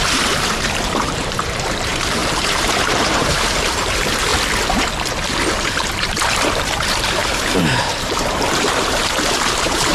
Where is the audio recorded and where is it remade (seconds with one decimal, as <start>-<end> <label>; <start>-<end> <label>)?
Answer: 0.0-4.3 remade; 4.3-5.5 recorded; 5.5-9.9 remade